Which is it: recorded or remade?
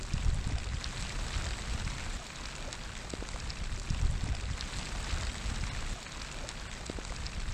recorded